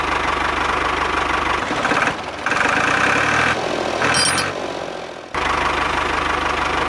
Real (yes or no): yes